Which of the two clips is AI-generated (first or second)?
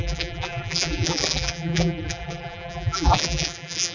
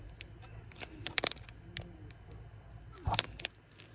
first